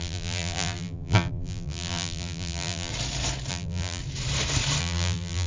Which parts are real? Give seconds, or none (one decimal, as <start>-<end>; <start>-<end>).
2.9-3.5; 4.0-4.8